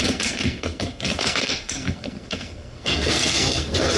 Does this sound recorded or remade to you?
remade